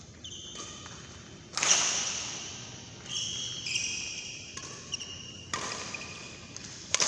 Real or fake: real